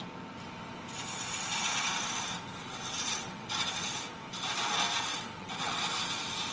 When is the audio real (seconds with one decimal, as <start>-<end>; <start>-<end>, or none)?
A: 0.0-2.6; 3.7-5.1; 5.8-6.5